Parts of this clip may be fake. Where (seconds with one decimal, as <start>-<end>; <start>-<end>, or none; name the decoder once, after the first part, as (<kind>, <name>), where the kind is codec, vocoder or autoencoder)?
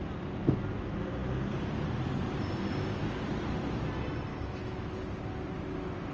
4.3-5.0 (autoencoder, DAC-VAE)